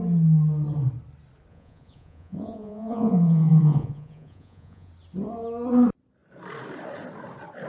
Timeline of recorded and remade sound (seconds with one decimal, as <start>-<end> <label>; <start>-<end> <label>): 0.0-1.5 recorded; 1.5-4.9 remade; 4.9-7.7 recorded